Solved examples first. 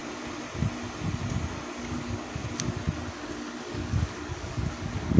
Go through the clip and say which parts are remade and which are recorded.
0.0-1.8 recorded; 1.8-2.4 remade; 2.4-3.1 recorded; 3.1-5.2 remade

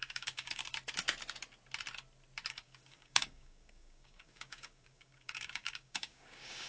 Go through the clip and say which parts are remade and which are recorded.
0.0-0.6 remade; 0.6-2.5 recorded; 2.5-6.7 remade

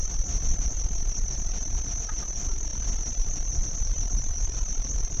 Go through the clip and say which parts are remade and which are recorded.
0.0-5.2 recorded